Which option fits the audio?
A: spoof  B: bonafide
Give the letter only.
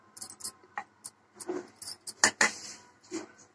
B